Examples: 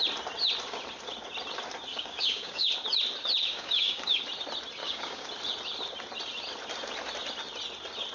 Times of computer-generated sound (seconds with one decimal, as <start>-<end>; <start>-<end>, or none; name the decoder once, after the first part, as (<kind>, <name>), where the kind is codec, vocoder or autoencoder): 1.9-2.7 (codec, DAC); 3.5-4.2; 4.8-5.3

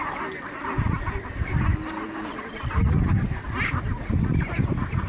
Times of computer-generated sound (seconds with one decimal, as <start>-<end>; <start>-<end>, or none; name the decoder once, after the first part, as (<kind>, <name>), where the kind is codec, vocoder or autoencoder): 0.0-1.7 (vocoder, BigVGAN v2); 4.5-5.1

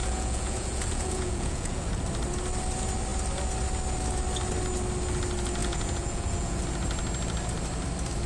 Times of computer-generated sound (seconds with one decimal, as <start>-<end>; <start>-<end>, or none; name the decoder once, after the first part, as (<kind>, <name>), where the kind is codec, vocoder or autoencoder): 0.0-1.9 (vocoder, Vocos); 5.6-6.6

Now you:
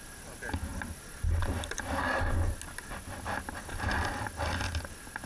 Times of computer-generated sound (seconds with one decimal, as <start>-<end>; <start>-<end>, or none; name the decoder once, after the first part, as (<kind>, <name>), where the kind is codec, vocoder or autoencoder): none

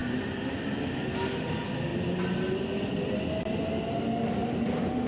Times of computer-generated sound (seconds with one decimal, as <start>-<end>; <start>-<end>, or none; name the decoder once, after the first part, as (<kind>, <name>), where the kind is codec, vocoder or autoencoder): 0.0-0.8 (vocoder, BigVGAN v2); 4.4-5.1